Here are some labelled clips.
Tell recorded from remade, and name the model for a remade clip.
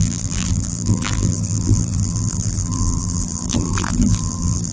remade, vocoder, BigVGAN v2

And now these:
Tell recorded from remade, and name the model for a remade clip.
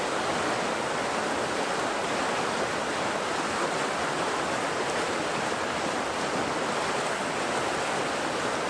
recorded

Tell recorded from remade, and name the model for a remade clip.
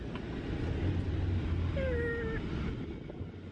recorded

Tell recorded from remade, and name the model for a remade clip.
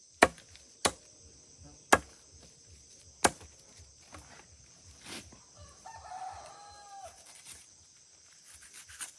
recorded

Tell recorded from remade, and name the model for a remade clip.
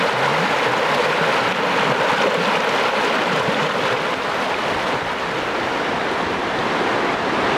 recorded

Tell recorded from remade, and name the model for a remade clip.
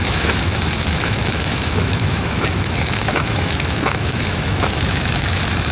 remade, autoencoder, DAC-VAE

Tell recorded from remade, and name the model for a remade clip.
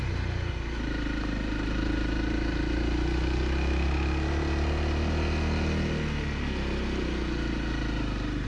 recorded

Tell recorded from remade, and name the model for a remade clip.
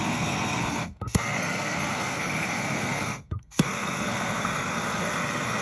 remade, codec, SNAC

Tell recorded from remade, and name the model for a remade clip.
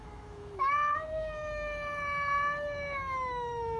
remade, autoencoder, DAC-VAE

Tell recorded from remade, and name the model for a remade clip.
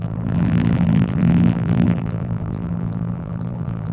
remade, vocoder, BigVGAN v2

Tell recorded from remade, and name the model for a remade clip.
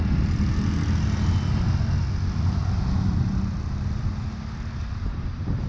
recorded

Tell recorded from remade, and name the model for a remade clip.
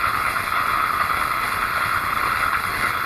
remade, codec, HILCodec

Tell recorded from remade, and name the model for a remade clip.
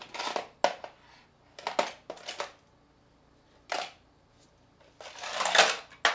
recorded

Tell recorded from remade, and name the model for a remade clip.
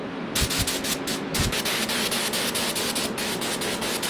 recorded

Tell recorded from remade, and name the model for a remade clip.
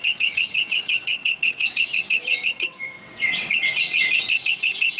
remade, vocoder, WaveNeXt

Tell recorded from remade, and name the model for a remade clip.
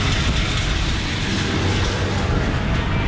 recorded